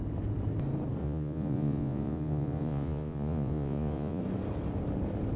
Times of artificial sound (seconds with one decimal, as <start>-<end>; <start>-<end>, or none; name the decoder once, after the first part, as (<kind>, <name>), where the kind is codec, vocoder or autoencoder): 1.0-4.2 (vocoder, Vocos)